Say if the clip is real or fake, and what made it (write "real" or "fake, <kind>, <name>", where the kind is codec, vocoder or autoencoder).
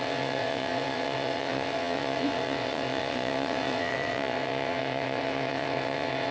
fake, vocoder, WaveNeXt